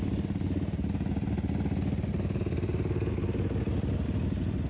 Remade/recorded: recorded